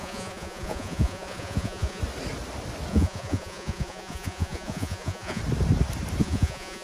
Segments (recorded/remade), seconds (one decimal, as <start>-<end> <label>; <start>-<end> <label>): 0.0-2.0 remade; 2.0-2.9 recorded; 2.9-5.4 remade; 5.4-6.2 recorded; 6.2-6.8 remade